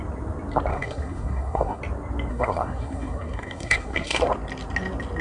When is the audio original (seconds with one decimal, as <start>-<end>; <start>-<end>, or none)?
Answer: 0.0-0.7; 1.8-2.3; 4.2-5.2